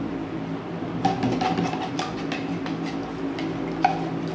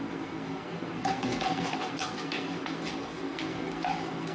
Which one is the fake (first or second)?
second